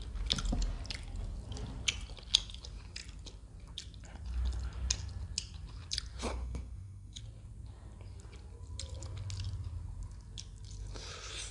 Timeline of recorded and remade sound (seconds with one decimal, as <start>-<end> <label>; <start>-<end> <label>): 0.0-6.3 recorded; 6.3-7.2 remade; 7.2-11.5 recorded